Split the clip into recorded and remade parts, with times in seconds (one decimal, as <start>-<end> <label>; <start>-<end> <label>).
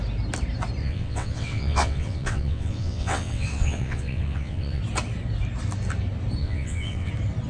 0.0-0.8 recorded; 0.8-4.8 remade; 4.8-6.4 recorded; 6.4-7.1 remade; 7.1-7.5 recorded